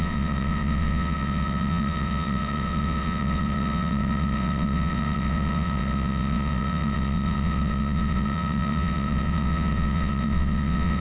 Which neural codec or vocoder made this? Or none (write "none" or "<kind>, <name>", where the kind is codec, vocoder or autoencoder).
vocoder, WaveNeXt